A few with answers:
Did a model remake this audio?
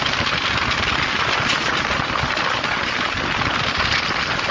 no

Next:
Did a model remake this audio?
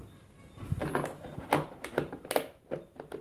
no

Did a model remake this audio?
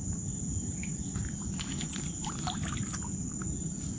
no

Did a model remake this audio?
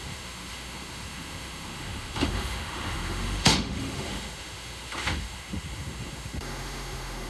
yes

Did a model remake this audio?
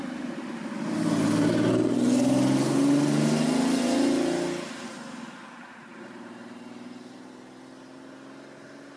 no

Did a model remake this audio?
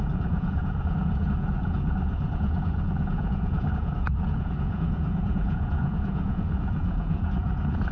yes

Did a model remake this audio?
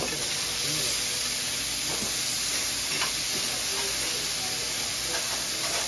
no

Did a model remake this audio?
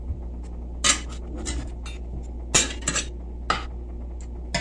no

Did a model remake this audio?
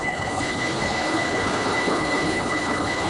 yes